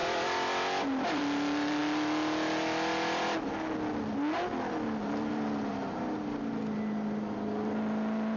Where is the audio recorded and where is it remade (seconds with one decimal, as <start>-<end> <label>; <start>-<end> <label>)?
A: 0.0-1.2 remade; 1.2-8.4 recorded

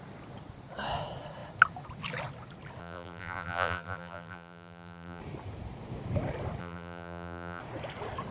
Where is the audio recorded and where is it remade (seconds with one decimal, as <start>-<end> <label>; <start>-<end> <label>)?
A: 0.0-2.8 recorded; 2.8-5.2 remade; 5.2-6.6 recorded; 6.6-7.6 remade; 7.6-8.3 recorded

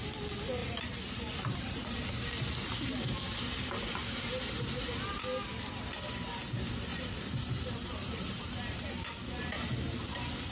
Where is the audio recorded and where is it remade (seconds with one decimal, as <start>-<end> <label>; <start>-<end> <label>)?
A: 0.0-0.6 recorded; 0.6-4.5 remade; 4.5-6.9 recorded; 6.9-9.0 remade; 9.0-10.5 recorded